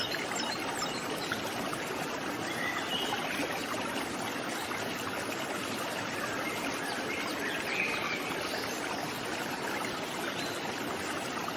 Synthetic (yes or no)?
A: yes